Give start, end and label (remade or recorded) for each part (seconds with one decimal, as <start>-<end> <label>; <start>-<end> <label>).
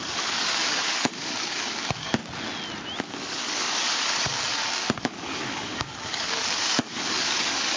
0.0-2.2 remade; 2.2-3.0 recorded; 3.0-7.8 remade